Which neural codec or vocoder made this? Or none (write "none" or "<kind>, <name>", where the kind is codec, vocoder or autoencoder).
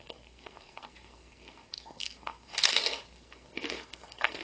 codec, SNAC